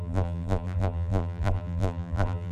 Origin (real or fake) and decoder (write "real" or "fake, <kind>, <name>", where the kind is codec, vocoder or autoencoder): fake, vocoder, BigVGAN v2